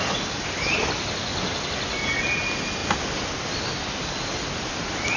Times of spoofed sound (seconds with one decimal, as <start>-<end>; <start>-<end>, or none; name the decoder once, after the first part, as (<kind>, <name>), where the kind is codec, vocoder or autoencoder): none